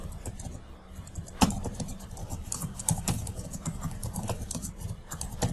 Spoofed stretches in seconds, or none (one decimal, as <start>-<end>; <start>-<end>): 2.2-4.7